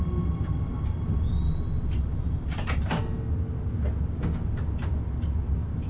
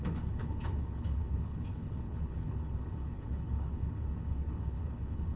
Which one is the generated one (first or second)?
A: second